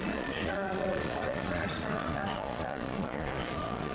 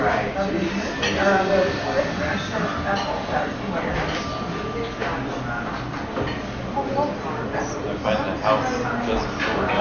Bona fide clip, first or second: second